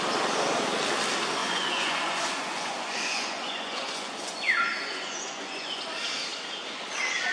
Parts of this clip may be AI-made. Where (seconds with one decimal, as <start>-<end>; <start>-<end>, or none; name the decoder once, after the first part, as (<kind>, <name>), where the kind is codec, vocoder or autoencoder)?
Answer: 1.4-5.8 (vocoder, Vocos)